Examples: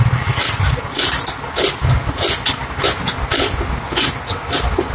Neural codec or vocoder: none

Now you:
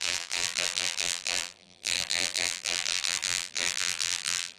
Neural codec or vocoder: vocoder, BigVGAN v2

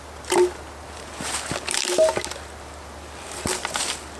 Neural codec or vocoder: none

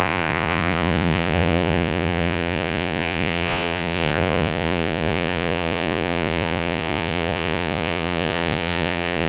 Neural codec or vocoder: vocoder, Vocos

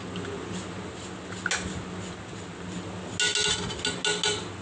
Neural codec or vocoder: none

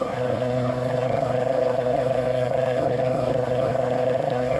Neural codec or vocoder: codec, SNAC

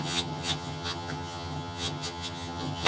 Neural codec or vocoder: vocoder, HiFi-GAN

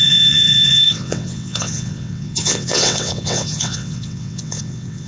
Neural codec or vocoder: vocoder, WaveNeXt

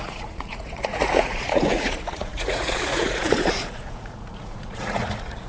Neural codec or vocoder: vocoder, Vocos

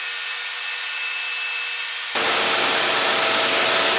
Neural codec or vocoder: none